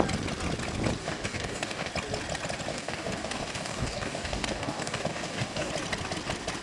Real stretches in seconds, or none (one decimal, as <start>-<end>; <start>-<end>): 0.0-1.0; 1.9-2.7; 5.7-6.6